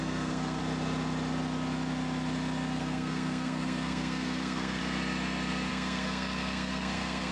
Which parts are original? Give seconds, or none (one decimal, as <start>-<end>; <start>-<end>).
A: 0.6-2.8; 4.8-5.7